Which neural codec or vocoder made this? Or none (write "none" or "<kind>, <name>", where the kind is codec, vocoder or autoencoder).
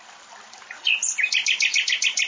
none